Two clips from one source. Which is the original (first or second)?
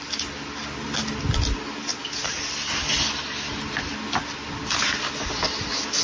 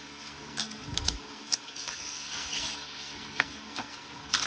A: first